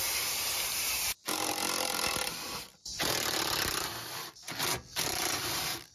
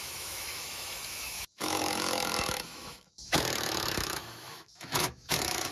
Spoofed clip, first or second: second